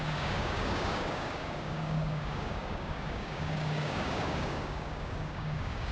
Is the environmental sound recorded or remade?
remade